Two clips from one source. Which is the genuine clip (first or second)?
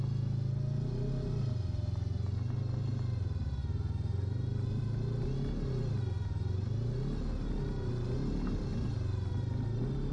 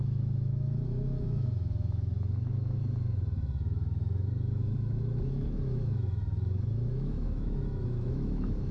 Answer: first